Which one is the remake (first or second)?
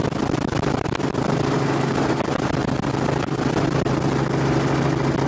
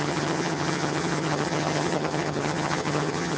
second